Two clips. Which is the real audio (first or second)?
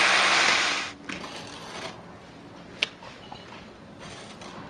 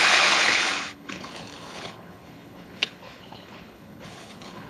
first